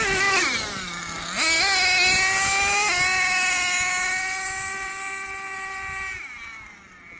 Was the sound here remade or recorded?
recorded